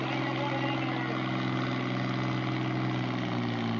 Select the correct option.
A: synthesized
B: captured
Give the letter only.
B